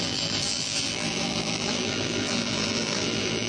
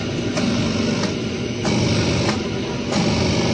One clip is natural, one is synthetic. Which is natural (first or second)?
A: second